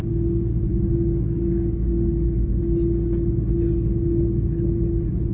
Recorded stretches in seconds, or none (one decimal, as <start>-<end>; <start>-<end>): 0.0-0.7; 2.6-5.3